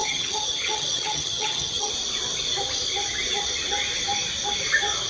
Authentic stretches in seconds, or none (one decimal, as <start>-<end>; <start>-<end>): 1.9-5.1